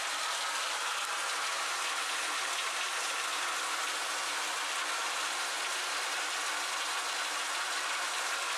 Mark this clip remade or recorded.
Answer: recorded